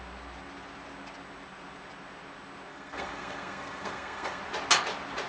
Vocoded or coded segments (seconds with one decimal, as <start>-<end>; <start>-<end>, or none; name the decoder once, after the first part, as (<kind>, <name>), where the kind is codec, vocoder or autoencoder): 2.7-4.4 (codec, SNAC)